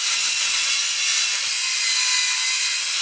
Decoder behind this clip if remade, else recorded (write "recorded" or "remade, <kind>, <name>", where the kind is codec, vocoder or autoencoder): recorded